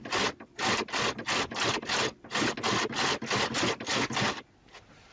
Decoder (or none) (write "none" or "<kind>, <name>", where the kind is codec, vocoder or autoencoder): none